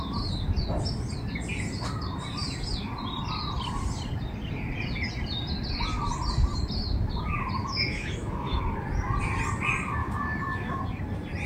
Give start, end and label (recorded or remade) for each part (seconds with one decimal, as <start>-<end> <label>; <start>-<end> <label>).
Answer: 0.0-7.6 recorded; 7.6-8.6 remade; 8.6-10.0 recorded; 10.0-10.8 remade; 10.8-11.5 recorded